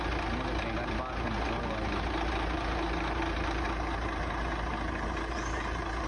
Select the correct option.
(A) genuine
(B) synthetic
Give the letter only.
A